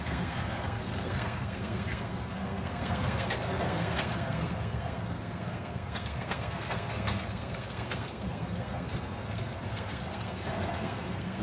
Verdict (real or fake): fake